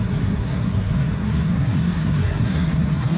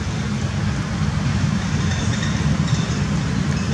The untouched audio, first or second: second